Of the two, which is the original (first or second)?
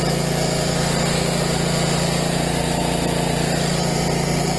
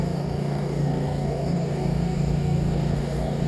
first